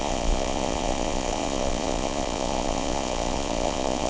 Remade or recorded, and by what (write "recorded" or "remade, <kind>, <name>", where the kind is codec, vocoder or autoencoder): remade, vocoder, Vocos